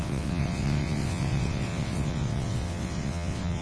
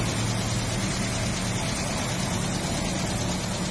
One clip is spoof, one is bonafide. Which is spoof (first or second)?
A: first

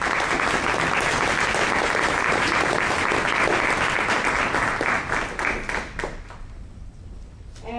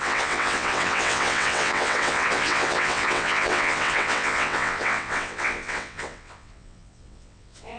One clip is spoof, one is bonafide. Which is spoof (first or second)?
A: second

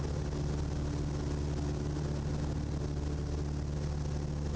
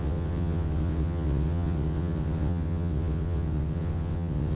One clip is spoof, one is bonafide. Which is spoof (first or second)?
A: second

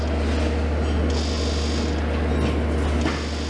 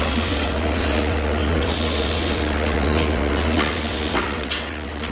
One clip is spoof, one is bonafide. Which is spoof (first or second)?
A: second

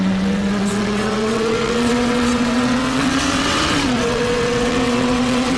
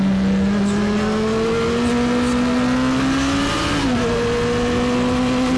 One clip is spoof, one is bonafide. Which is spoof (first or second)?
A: first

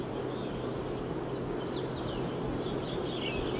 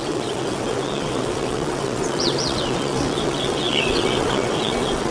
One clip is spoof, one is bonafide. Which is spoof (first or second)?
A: second